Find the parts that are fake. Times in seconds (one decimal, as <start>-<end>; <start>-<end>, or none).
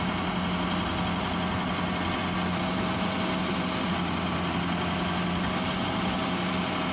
none